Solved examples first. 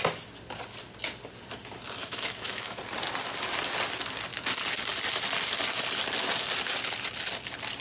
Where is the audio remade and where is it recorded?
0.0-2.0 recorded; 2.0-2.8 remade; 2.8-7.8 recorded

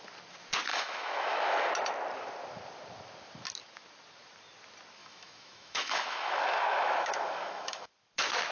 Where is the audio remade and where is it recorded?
0.0-0.7 recorded; 0.7-1.7 remade; 1.7-5.0 recorded; 5.0-7.9 remade; 7.9-8.5 recorded